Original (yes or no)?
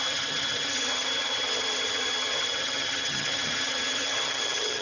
no